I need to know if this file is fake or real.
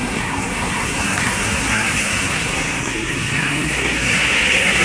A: fake